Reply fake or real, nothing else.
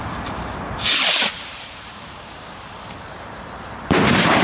fake